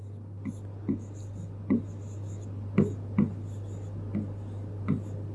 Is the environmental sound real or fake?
real